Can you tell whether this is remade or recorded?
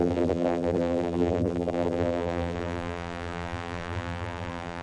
remade